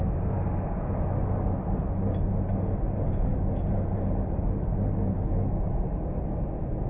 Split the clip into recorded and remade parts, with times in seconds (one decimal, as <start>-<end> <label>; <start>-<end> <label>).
0.0-6.9 recorded